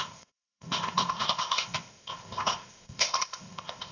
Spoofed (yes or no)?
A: yes